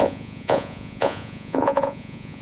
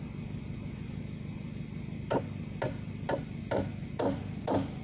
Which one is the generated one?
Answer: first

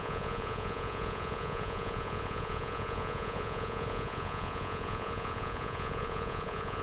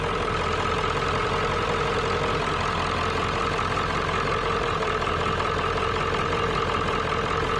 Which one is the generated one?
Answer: first